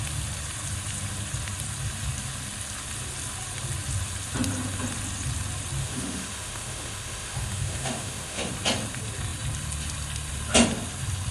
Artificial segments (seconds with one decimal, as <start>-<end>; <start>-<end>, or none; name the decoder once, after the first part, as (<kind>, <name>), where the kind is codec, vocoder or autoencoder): 5.8-8.5 (autoencoder, DAC-VAE)